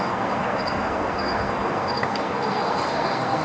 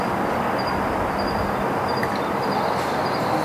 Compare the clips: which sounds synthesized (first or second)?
first